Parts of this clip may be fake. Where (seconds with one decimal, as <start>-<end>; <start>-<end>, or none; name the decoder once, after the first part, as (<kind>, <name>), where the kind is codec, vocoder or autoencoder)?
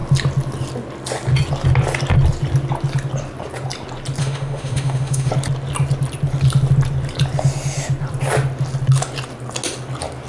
4.2-5.3 (autoencoder, DAC-VAE)